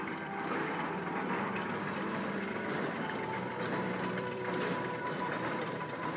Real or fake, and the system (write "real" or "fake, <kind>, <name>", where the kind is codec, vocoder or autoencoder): fake, vocoder, BigVGAN v2